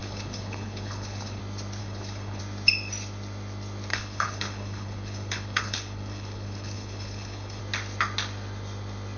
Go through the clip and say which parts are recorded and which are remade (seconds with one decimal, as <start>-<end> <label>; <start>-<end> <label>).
0.0-1.4 remade; 1.4-1.8 recorded; 1.8-2.4 remade; 2.4-3.9 recorded; 3.9-7.6 remade; 7.6-9.2 recorded